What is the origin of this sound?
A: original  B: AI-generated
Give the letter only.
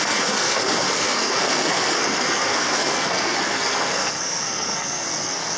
B